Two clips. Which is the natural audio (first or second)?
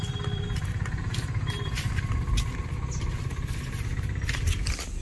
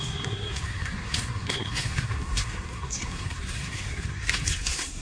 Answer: first